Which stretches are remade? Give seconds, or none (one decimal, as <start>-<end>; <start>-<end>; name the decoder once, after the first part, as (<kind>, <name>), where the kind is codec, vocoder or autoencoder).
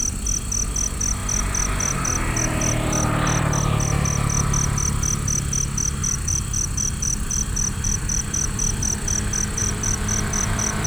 6.0-8.8 (vocoder, BigVGAN v2); 9.6-10.9